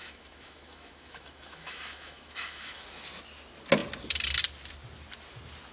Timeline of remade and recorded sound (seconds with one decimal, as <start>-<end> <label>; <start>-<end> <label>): 0.0-2.8 remade; 2.8-5.7 recorded